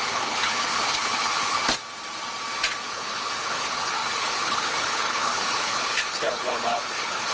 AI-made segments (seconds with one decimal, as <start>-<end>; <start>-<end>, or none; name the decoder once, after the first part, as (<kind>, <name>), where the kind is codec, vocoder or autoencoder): 0.0-1.6 (codec, HILCodec); 2.8-7.3